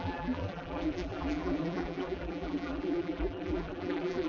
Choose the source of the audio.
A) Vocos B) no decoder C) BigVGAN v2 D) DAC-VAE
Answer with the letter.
C